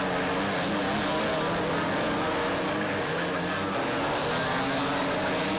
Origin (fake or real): real